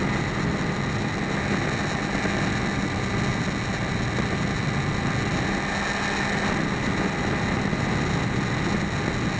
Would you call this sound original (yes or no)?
yes